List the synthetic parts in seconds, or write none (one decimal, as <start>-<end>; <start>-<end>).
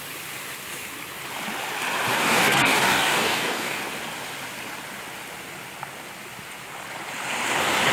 2.1-3.8